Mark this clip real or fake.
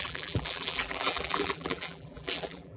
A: fake